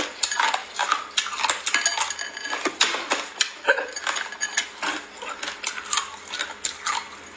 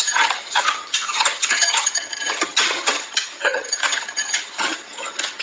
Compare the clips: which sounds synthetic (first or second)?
second